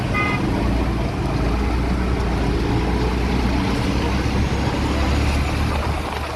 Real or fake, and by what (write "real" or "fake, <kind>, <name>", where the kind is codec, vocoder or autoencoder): real